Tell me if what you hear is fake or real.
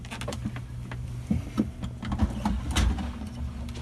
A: real